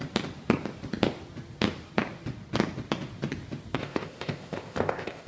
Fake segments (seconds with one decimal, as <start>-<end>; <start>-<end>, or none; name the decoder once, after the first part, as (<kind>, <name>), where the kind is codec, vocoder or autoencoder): 3.8-5.3 (codec, ZipCodec)

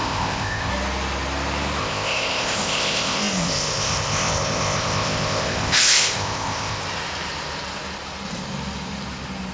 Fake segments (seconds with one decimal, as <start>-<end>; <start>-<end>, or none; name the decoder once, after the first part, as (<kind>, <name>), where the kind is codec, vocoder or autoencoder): 0.0-0.7 (codec, ZipCodec); 1.8-6.8

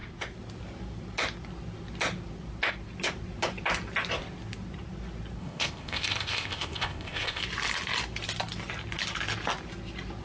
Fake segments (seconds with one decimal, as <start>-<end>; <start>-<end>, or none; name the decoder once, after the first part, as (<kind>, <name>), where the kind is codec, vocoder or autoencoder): 5.4-7.4 (codec, ZipCodec)

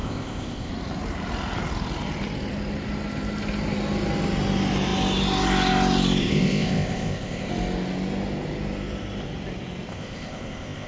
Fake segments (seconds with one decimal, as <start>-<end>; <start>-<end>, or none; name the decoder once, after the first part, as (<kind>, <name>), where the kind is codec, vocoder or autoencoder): 0.0-0.7 (codec, ZipCodec); 6.2-7.5; 9.9-10.9

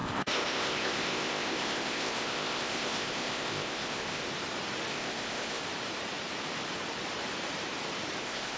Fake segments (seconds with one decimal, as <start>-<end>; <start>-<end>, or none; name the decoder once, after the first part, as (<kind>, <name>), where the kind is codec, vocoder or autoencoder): 0.0-4.2 (codec, ZipCodec); 4.9-5.6; 8.2-8.6

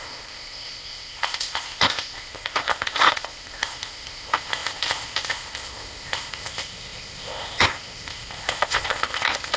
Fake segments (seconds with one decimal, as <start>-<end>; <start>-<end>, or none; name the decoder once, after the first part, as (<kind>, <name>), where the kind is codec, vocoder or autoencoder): 0.0-9.6 (codec, ZipCodec)